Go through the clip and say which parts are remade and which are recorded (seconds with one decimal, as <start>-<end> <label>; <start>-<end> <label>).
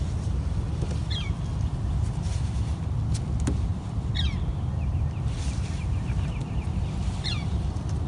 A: 0.0-8.1 recorded